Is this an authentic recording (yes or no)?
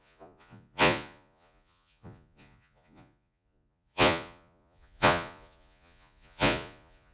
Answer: no